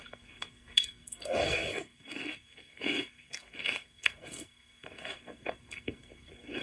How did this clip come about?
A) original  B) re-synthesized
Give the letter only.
B